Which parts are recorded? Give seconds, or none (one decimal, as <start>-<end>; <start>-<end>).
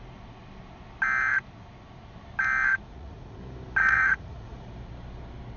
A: 0.0-2.7; 3.4-3.8; 4.7-5.6